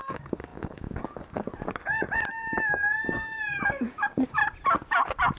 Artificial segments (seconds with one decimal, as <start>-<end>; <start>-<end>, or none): 0.0-4.4